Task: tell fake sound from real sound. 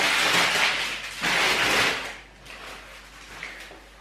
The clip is real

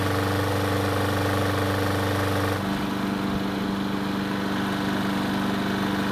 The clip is real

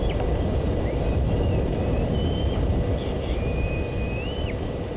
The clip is fake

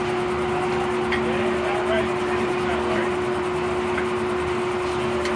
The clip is fake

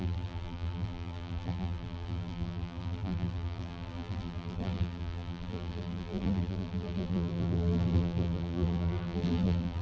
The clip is fake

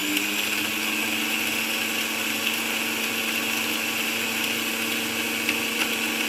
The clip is real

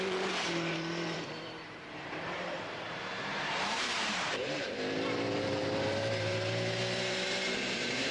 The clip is fake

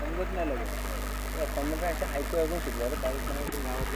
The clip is real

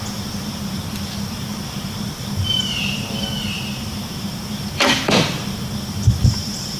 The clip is fake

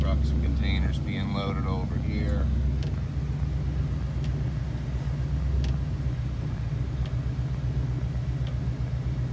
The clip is real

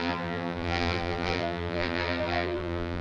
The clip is fake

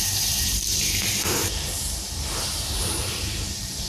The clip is fake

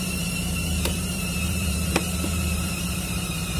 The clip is fake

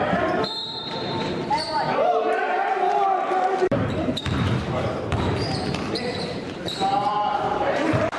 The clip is fake